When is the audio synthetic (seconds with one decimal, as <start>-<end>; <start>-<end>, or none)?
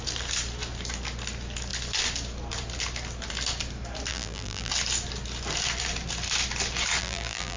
4.1-4.7; 7.0-7.6